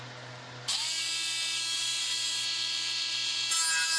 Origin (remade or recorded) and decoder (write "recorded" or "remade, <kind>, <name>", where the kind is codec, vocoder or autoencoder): recorded